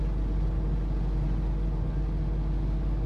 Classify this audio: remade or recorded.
recorded